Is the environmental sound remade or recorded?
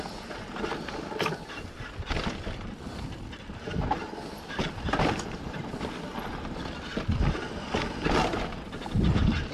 remade